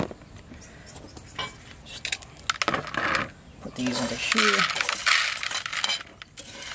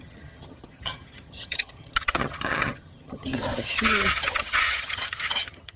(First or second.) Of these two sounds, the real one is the first